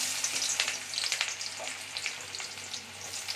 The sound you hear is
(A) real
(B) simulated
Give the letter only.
A